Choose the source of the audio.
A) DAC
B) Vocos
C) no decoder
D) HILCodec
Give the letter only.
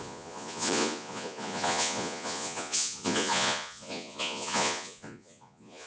B